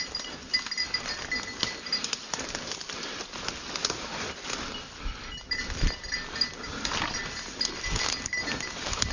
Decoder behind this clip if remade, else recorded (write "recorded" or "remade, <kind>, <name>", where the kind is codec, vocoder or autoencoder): recorded